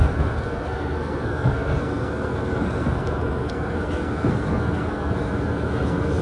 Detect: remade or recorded remade